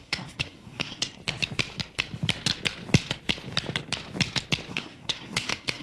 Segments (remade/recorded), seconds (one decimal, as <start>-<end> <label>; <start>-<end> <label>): 0.0-1.2 remade; 1.2-4.7 recorded; 4.7-5.8 remade